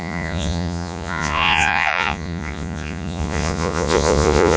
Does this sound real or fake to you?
fake